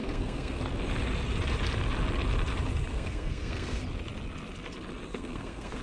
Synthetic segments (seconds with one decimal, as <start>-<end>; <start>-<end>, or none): 0.0-0.6; 2.9-3.8; 5.1-5.8